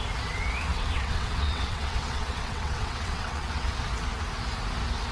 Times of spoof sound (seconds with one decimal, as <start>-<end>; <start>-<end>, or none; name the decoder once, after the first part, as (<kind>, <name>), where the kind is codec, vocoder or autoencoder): 0.7-3.8 (vocoder, WaveNeXt)